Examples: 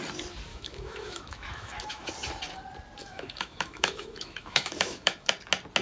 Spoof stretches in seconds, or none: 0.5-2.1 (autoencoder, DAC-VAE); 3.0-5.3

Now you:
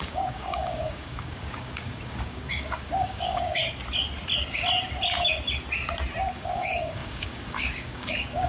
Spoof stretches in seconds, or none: 0.0-3.6 (codec, DAC); 6.3-8.5